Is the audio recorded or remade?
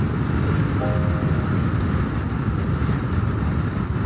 recorded